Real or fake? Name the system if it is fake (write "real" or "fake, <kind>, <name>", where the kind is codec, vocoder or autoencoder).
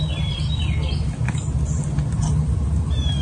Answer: real